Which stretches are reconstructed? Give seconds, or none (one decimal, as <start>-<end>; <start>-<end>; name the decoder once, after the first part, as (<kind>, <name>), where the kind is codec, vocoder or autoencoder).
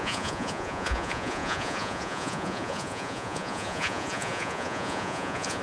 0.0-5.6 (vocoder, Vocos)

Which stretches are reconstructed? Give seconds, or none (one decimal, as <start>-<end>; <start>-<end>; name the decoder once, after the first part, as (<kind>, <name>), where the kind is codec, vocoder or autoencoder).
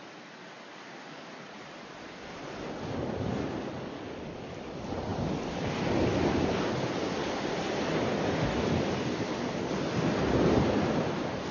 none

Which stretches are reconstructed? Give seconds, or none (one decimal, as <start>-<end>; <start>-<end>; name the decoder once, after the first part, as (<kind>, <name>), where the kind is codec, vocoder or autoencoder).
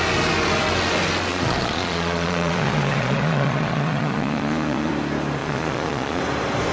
1.3-4.9 (vocoder, Vocos); 5.4-6.2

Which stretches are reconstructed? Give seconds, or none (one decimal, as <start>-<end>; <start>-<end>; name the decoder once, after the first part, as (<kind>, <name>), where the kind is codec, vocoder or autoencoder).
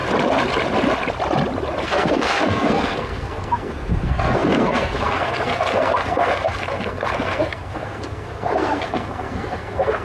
1.8-10.0 (codec, SNAC)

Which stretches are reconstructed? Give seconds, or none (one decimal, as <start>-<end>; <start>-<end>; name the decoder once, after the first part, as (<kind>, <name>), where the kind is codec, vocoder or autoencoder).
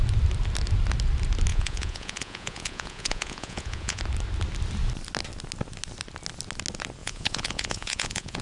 1.5-4.0 (vocoder, Vocos); 7.0-8.4